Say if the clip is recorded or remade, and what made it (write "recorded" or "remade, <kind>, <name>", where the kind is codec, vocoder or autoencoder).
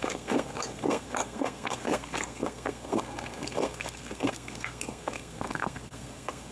remade, codec, SNAC